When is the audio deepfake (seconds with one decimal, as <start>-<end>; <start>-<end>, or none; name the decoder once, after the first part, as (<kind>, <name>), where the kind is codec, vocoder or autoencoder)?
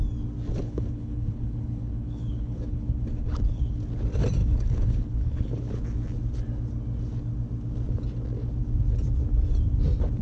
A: 0.6-3.8 (codec, HILCodec); 4.4-5.8